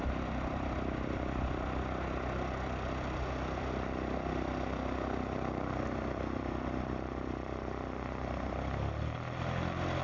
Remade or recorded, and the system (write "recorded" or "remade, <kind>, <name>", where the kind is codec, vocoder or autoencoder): recorded